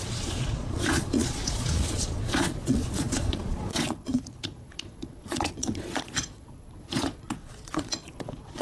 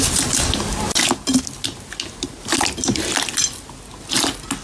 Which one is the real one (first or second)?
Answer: second